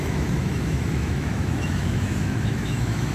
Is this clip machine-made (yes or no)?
yes